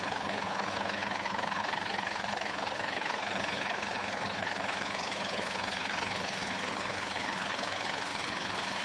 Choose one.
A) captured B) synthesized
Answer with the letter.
B